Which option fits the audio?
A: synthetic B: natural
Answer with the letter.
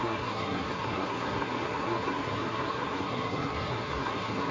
A